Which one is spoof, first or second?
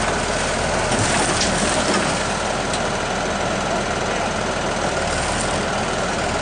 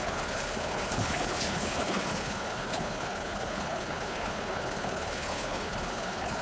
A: second